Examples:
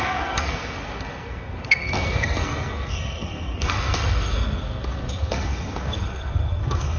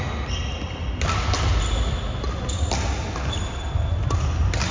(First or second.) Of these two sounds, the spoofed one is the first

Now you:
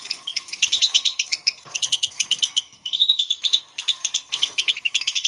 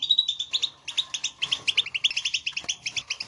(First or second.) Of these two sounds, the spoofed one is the first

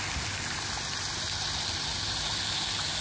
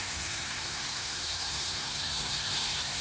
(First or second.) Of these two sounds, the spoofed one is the second